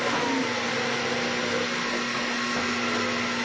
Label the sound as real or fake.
real